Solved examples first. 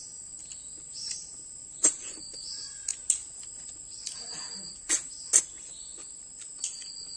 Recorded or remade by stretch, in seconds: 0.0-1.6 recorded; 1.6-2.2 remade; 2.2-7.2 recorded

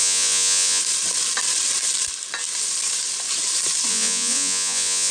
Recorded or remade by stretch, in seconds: 0.0-0.8 remade; 0.8-3.9 recorded; 3.9-5.1 remade